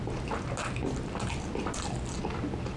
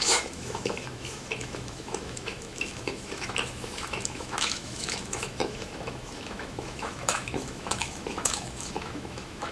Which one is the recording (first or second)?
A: first